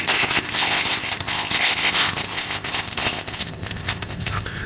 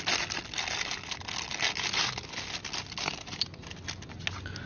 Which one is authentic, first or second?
second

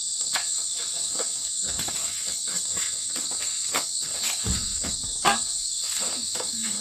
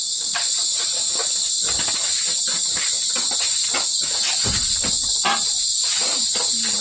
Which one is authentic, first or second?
second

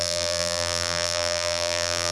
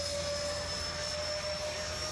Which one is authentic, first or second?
second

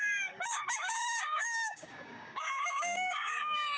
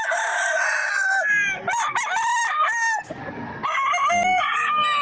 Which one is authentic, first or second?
second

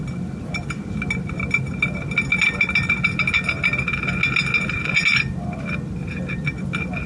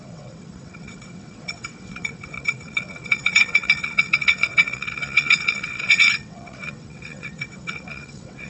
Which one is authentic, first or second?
first